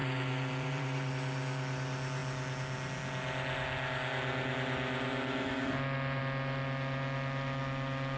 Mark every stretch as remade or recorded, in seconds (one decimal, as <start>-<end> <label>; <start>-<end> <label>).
0.0-1.1 remade; 1.1-8.2 recorded